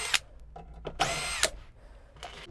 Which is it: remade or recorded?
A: recorded